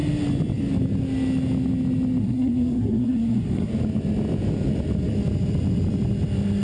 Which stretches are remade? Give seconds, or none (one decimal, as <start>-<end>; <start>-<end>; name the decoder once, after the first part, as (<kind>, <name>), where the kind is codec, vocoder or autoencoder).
2.2-3.7 (codec, SNAC)